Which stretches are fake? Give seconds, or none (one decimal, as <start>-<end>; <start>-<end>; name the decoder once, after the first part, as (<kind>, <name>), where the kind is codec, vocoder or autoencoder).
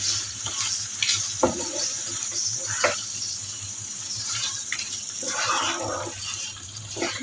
0.0-7.2 (vocoder, BigVGAN v2)